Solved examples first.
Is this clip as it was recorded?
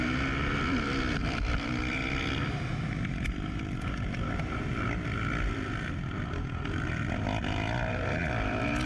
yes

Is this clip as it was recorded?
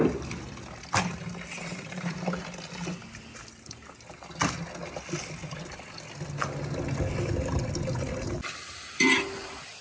yes